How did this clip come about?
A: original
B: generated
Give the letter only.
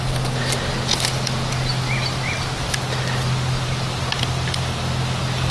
A